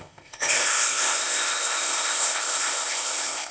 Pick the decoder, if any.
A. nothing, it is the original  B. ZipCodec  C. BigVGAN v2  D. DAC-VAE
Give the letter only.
B